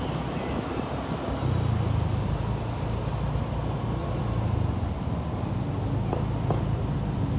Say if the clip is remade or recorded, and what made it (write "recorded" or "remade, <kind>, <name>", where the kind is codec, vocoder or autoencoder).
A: recorded